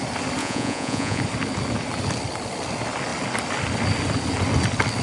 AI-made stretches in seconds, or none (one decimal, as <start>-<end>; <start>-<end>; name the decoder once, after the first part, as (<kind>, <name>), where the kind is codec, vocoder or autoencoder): 0.4-1.2 (vocoder, Vocos)